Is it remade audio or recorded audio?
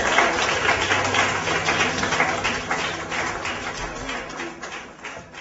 recorded